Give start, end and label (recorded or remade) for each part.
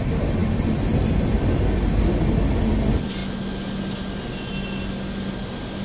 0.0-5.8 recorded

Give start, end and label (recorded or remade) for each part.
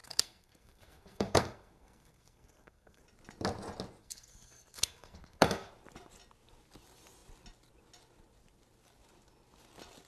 0.0-3.0 remade; 3.0-4.0 recorded; 4.0-5.7 remade; 5.7-10.1 recorded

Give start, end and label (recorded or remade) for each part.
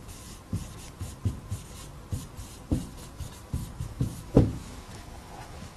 0.0-3.6 recorded; 3.6-5.8 remade